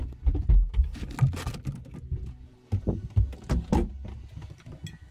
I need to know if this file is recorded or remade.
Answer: recorded